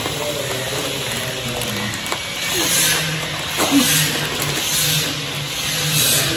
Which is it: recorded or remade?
recorded